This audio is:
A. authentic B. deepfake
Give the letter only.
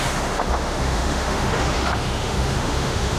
B